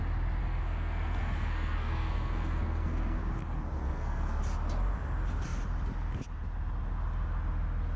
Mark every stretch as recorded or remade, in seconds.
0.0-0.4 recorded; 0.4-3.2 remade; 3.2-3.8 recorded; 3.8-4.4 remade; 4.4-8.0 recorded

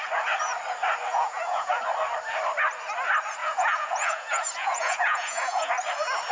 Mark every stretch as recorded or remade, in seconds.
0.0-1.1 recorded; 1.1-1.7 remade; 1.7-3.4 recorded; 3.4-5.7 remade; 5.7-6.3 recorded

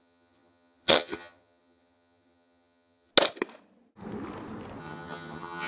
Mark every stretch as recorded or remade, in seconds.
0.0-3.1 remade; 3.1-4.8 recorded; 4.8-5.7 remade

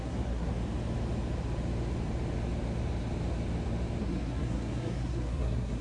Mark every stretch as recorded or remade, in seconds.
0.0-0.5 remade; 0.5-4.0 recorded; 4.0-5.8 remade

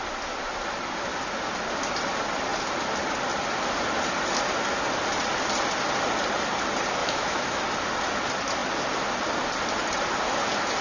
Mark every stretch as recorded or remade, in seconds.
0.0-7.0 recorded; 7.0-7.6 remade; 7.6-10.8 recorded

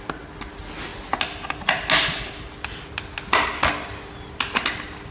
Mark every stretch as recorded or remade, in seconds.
0.0-5.1 recorded